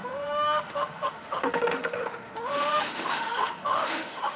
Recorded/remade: remade